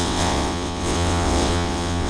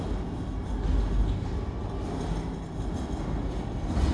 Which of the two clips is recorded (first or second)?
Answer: second